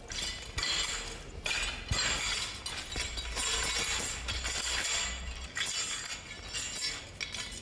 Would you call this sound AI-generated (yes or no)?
no